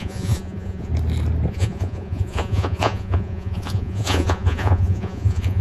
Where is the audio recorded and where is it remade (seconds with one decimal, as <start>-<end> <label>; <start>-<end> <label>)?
0.0-0.9 remade; 0.9-1.5 recorded; 1.5-5.6 remade